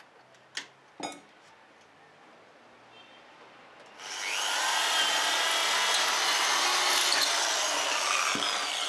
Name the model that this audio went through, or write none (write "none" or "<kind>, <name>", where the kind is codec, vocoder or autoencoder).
none